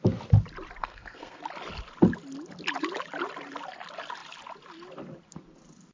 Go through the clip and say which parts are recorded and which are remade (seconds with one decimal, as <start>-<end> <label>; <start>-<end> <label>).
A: 0.0-0.8 recorded; 0.8-1.4 remade; 1.4-5.9 recorded

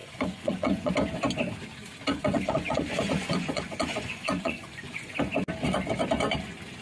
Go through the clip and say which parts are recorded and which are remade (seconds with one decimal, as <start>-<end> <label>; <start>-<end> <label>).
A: 0.0-0.9 remade; 0.9-2.1 recorded; 2.1-5.1 remade; 5.1-6.8 recorded